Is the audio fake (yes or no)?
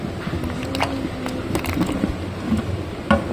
no